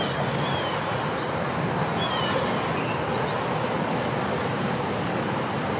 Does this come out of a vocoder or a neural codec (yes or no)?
no